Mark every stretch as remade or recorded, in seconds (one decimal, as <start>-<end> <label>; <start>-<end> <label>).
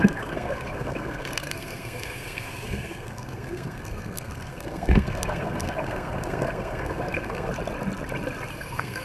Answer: 0.0-7.5 remade; 7.5-8.5 recorded; 8.5-9.0 remade